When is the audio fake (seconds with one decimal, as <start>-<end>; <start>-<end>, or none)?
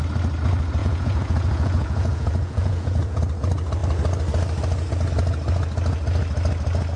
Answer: 0.8-3.2